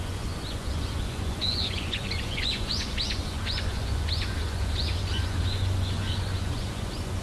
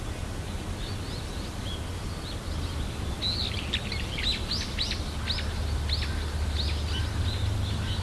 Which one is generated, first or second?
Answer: first